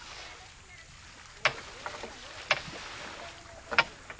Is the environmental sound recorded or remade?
recorded